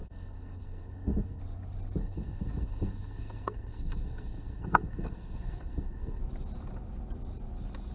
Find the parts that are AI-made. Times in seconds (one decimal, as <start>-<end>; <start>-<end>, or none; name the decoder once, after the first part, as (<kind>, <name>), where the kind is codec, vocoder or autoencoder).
0.0-1.4 (codec, SNAC); 2.0-6.2